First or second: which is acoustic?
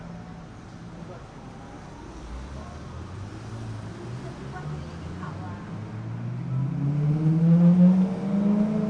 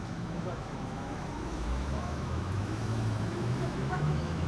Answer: first